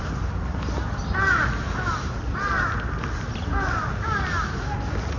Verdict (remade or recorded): recorded